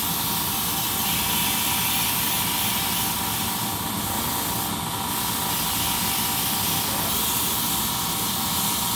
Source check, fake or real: real